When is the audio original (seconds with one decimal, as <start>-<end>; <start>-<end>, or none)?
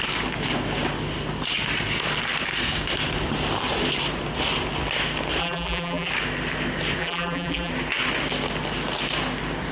0.0-5.4; 6.1-7.0; 7.7-9.7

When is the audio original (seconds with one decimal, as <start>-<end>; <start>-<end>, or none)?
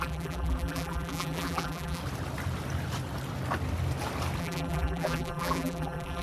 2.0-4.4